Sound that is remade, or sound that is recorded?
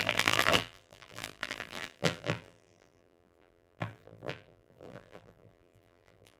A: remade